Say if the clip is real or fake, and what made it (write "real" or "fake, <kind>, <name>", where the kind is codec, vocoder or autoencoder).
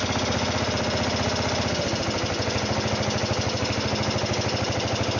real